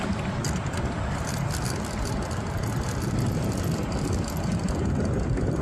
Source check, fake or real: real